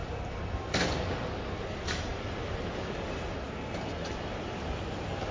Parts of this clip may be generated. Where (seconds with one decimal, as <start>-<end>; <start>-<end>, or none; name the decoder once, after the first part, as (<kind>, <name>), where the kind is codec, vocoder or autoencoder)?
none